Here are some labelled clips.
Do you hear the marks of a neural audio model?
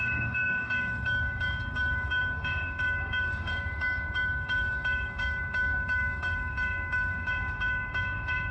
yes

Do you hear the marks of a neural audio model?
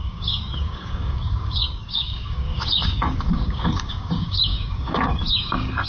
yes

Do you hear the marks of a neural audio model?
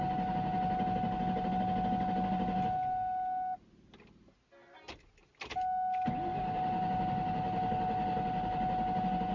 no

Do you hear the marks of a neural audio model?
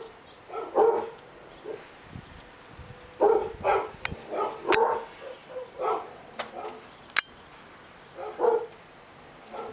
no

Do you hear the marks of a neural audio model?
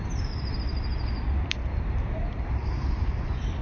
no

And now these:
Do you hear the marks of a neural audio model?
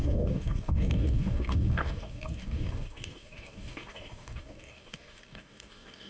yes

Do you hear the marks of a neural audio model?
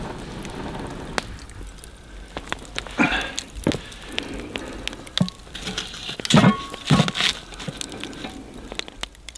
no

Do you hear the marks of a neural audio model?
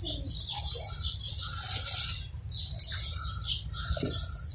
no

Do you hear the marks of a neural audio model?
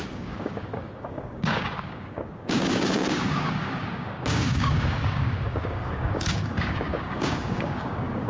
yes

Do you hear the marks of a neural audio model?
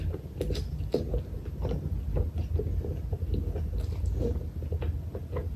no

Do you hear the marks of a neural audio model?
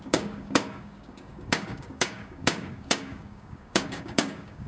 yes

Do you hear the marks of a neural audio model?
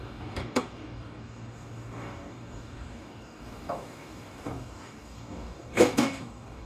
yes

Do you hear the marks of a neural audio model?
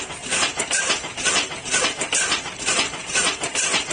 no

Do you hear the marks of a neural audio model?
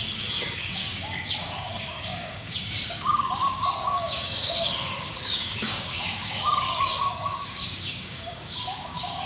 yes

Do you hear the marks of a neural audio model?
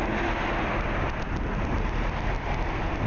no